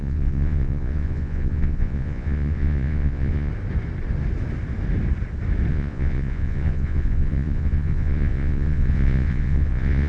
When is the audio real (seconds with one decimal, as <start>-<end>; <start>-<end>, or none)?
3.5-5.7